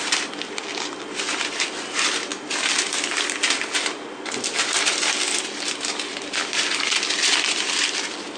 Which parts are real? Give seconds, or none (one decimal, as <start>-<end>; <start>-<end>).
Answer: 0.0-8.4